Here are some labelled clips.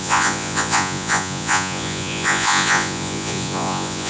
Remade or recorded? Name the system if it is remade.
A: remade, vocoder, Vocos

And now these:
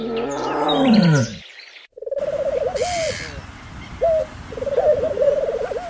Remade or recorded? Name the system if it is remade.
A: recorded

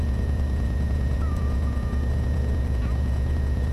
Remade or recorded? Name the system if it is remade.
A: remade, vocoder, Vocos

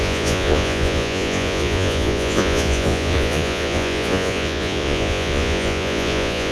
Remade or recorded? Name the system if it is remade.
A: remade, vocoder, Vocos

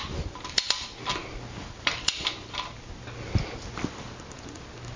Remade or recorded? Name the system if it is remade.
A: recorded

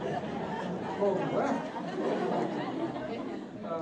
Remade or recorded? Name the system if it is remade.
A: recorded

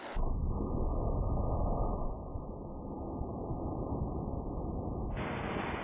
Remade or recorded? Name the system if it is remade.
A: recorded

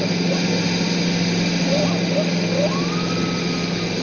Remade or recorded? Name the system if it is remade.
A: recorded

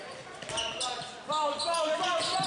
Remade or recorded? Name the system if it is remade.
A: recorded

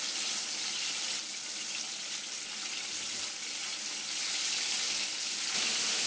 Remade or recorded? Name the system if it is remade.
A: recorded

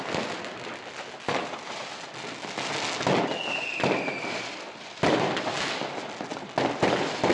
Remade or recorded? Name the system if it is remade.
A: recorded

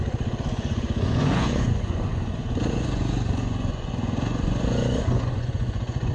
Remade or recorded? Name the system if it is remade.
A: remade, vocoder, Vocos